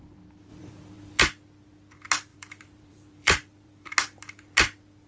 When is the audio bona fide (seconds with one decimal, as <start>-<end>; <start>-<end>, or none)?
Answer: 0.0-0.5; 1.2-2.3; 3.9-5.1